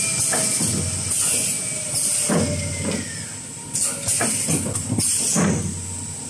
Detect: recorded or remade recorded